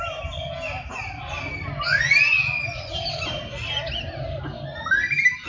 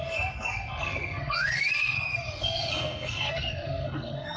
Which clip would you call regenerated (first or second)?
second